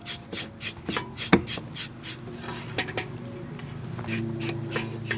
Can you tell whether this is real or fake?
real